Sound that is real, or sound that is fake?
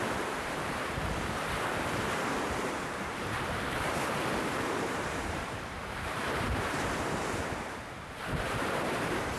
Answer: fake